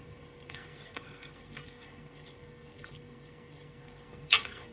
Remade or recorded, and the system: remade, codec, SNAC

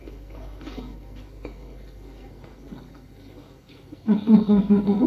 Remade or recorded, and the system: remade, codec, SNAC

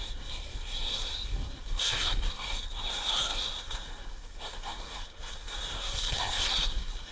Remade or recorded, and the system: remade, codec, SNAC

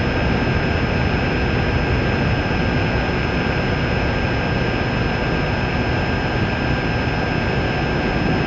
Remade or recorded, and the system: recorded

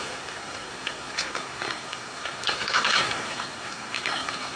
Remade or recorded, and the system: remade, codec, SNAC